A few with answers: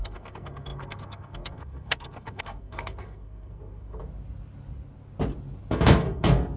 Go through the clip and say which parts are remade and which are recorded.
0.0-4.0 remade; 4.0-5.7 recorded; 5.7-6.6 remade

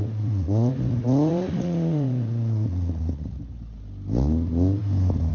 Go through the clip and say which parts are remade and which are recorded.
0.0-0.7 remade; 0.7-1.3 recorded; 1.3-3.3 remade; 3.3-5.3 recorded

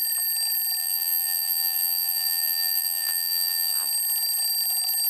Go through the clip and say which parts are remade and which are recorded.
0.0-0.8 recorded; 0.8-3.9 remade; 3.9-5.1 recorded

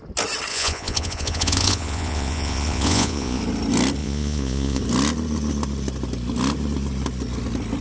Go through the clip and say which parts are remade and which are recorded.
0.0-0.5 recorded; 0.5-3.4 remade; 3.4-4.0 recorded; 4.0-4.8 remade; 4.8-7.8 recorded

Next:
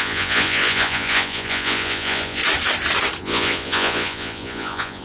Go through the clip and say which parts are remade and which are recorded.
0.0-2.4 remade; 2.4-3.2 recorded; 3.2-5.0 remade